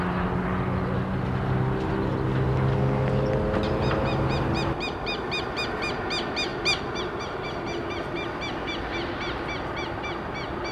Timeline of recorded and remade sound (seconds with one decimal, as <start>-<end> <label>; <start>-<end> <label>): 0.0-10.7 recorded